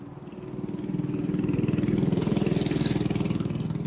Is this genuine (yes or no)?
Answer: yes